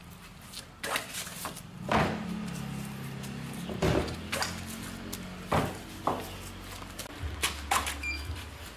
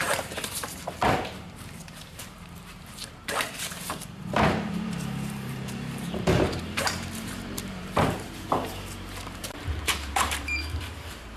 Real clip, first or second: first